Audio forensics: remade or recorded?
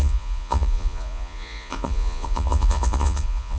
remade